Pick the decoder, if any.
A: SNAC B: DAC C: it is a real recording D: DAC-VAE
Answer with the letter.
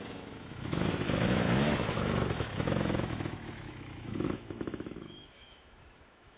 D